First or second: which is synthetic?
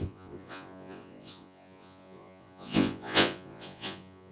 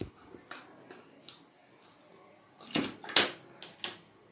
first